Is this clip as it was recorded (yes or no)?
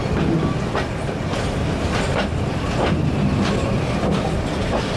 yes